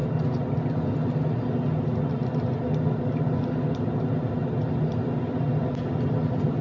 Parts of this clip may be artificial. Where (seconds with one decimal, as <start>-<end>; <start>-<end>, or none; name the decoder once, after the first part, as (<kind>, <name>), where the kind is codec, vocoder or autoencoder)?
none

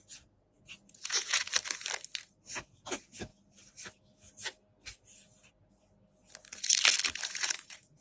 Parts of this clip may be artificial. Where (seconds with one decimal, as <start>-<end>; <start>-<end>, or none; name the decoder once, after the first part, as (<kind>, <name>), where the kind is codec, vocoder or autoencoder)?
0.0-1.5 (vocoder, Vocos); 2.5-3.3; 7.2-8.0

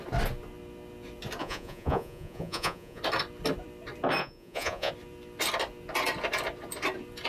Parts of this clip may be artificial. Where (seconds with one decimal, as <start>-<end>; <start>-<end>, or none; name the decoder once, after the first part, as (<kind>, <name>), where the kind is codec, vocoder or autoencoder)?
1.4-3.0 (vocoder, Vocos); 4.2-4.9

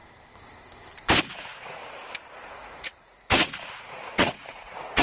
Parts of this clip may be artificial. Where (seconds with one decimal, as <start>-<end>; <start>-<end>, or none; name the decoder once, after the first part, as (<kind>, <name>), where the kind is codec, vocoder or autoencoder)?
1.2-1.8 (vocoder, Vocos); 2.3-5.0

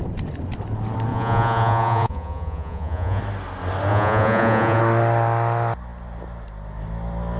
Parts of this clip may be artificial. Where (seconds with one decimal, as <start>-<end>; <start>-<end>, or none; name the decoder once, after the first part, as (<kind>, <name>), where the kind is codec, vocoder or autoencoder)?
1.1-3.2 (vocoder, Vocos); 3.9-4.8

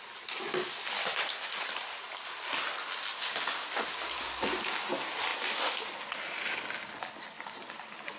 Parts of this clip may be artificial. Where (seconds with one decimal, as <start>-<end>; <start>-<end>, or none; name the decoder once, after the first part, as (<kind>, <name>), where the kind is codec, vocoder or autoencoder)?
none

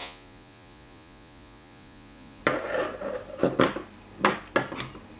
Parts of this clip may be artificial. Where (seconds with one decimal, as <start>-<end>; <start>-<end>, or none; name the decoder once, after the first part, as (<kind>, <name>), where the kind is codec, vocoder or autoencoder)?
0.0-2.4 (vocoder, Vocos)

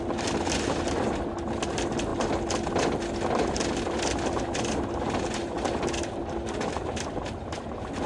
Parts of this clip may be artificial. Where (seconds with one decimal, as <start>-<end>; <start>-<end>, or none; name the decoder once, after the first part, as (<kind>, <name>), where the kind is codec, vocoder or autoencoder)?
none